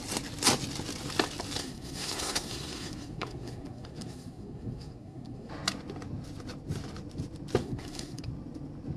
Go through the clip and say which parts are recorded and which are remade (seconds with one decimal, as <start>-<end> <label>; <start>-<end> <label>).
0.0-1.6 recorded; 1.6-5.5 remade; 5.5-7.6 recorded; 7.6-8.3 remade; 8.3-9.0 recorded